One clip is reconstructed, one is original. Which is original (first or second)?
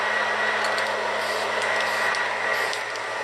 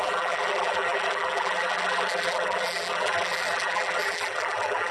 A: first